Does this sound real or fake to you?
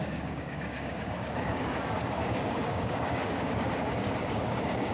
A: fake